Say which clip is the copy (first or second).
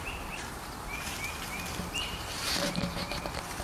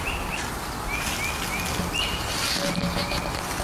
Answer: first